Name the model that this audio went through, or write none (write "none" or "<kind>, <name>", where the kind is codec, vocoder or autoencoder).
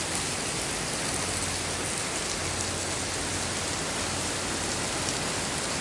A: none